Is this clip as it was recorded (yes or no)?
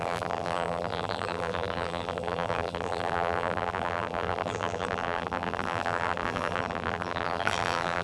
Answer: no